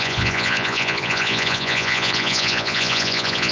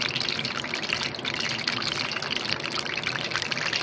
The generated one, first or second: first